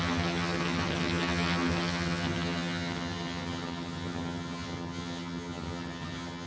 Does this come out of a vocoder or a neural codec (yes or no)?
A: yes